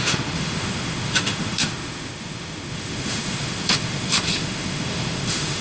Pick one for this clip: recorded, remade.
remade